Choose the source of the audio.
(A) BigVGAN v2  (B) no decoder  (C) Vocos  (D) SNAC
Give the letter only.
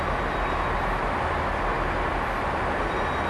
B